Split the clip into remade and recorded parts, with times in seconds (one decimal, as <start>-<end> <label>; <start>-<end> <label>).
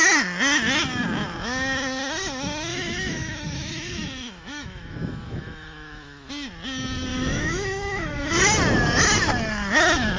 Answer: 0.0-2.7 recorded; 2.7-6.3 remade; 6.3-7.1 recorded; 7.1-8.4 remade; 8.4-10.2 recorded